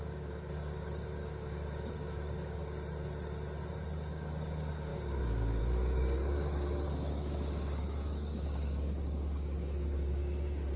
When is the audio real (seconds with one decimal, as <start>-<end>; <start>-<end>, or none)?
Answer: 2.6-4.1